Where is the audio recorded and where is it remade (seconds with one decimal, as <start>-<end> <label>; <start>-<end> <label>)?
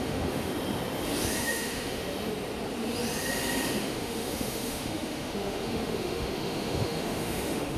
0.0-0.5 remade; 0.5-1.4 recorded; 1.4-2.0 remade; 2.0-3.8 recorded; 3.8-7.8 remade